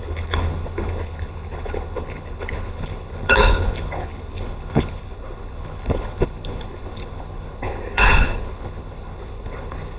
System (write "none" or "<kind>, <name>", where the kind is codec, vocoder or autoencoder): codec, HILCodec